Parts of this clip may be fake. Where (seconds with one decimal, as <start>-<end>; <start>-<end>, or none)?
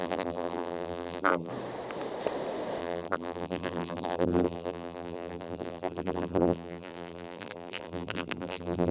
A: 0.0-1.5; 2.8-8.9